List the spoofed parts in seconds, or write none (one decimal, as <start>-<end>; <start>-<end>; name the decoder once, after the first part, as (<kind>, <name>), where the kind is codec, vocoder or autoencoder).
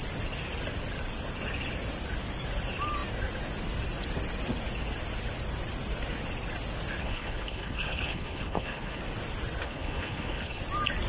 7.0-9.0 (codec, HILCodec); 9.6-10.6